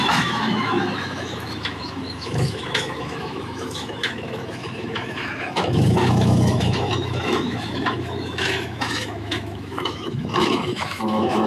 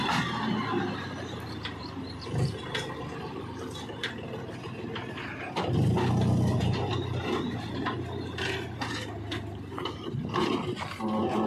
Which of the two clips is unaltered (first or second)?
second